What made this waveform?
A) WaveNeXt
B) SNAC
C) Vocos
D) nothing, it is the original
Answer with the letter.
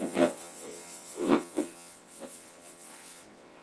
A